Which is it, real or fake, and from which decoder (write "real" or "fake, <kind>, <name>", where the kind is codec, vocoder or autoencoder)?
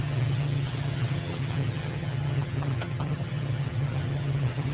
fake, vocoder, HiFi-GAN